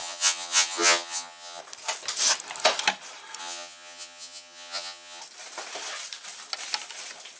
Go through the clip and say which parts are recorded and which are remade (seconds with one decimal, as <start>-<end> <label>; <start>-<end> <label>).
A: 0.0-1.6 remade; 1.6-3.4 recorded; 3.4-5.2 remade; 5.2-7.4 recorded